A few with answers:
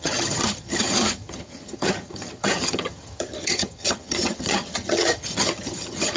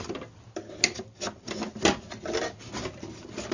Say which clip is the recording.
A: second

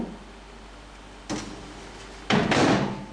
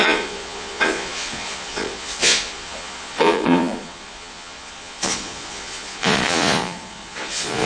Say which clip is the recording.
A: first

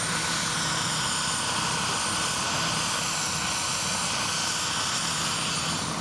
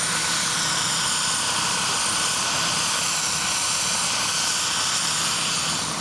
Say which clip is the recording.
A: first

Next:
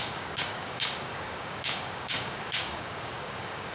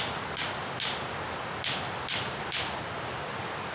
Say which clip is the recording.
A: second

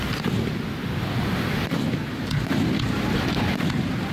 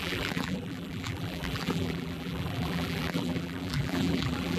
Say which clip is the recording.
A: first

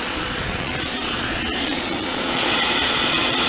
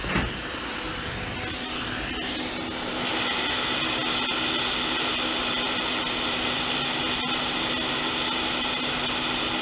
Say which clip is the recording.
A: second